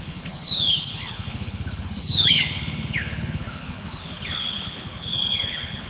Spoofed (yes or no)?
yes